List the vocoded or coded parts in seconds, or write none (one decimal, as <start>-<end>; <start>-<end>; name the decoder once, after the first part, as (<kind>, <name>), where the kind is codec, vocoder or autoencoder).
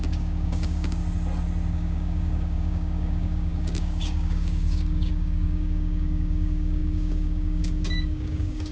0.0-1.0 (codec, DAC); 1.7-8.7